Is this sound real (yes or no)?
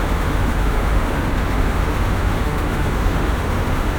no